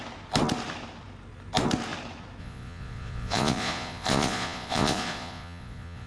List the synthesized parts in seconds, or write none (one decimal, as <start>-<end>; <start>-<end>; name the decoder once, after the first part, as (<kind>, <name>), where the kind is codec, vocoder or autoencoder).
2.4-6.1 (vocoder, Vocos)